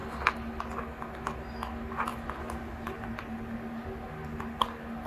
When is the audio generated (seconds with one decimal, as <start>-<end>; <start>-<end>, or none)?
none